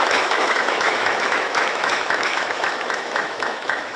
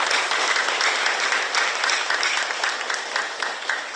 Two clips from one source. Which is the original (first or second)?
second